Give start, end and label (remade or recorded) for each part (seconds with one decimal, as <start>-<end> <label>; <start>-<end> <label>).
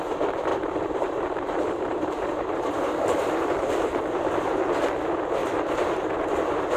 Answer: 0.0-0.5 recorded; 0.5-4.5 remade; 4.5-5.4 recorded; 5.4-6.3 remade; 6.3-6.8 recorded